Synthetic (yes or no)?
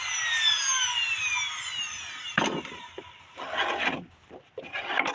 no